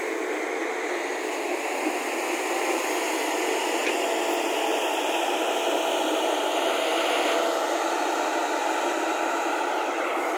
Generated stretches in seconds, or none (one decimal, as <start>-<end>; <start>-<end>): none